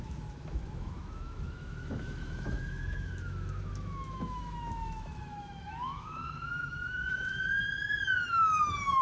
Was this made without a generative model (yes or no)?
no